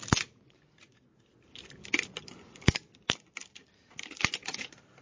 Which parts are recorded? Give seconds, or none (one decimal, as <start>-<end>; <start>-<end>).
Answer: 0.0-5.0